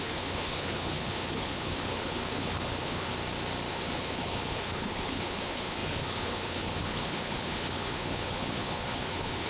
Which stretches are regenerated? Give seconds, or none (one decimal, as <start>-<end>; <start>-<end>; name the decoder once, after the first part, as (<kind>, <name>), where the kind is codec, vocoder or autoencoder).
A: 0.0-3.1 (codec, HILCodec); 3.7-9.5